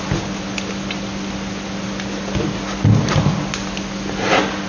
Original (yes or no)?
yes